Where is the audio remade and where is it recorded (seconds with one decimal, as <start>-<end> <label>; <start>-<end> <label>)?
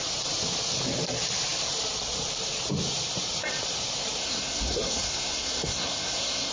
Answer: 0.0-4.2 recorded; 4.2-6.5 remade